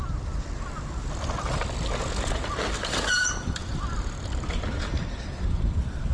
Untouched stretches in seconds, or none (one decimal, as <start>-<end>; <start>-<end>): 0.0-1.1

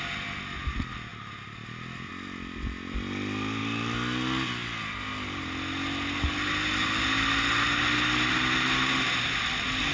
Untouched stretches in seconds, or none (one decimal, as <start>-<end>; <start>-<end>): 0.0-9.9